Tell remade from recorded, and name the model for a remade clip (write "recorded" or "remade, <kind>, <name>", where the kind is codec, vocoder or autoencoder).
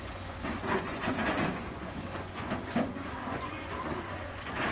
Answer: remade, vocoder, Vocos